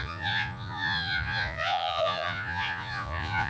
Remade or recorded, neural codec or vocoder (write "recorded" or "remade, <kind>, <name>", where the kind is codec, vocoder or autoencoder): remade, vocoder, Vocos